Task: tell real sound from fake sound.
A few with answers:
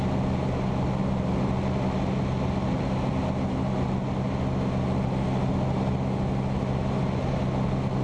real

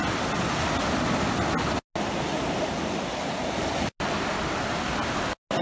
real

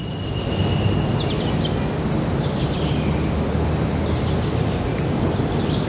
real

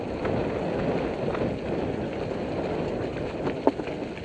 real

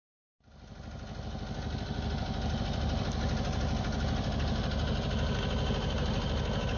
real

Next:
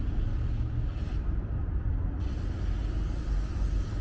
real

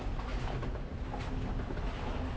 real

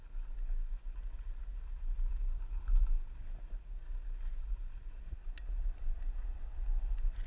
real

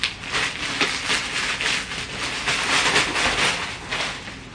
real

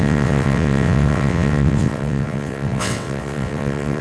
fake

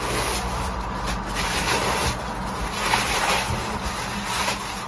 real